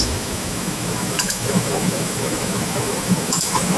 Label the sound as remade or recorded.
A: remade